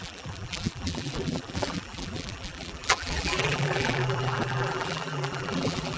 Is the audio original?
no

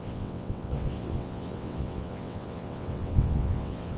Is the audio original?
no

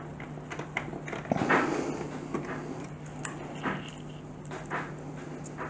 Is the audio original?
yes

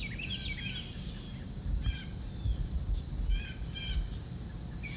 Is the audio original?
yes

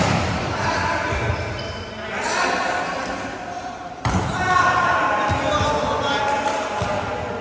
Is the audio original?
yes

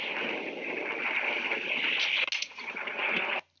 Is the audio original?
yes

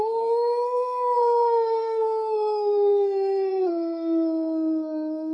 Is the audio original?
no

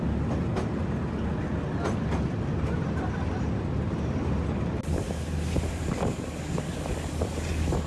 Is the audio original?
yes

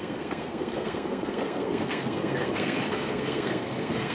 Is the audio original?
no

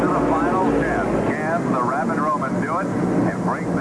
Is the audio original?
yes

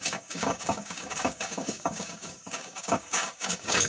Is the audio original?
no